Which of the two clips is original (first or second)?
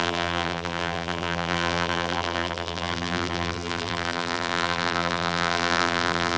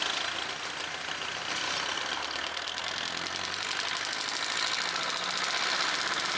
second